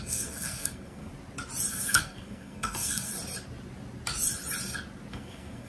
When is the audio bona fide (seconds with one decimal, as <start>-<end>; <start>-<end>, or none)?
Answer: 1.1-1.7; 3.1-5.1